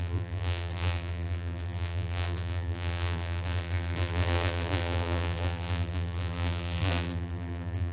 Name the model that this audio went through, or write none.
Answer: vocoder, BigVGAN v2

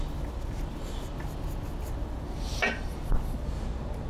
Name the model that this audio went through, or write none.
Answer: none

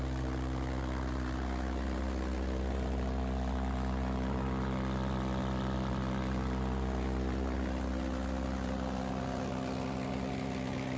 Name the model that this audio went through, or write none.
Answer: none